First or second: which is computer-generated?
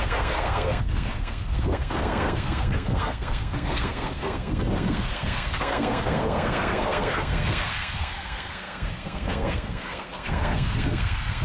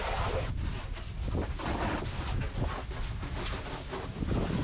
first